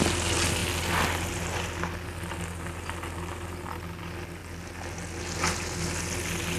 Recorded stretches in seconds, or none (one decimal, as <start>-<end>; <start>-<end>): 0.0-6.6